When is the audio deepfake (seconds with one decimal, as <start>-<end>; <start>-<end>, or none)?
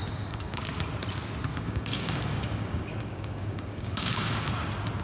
0.0-0.6; 1.5-4.5